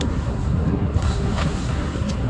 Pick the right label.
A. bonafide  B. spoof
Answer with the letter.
B